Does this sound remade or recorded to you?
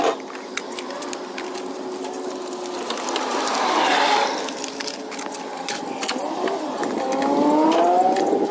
recorded